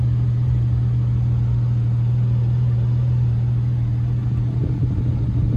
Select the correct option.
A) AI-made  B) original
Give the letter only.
B